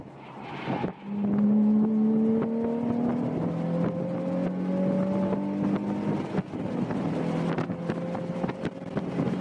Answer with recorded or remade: recorded